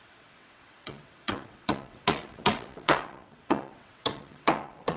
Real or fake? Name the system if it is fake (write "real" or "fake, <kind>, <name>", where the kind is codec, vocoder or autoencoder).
fake, vocoder, WaveNeXt